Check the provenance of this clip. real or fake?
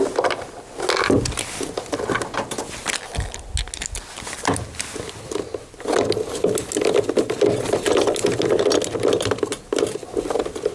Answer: real